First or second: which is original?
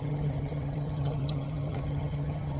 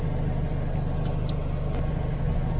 second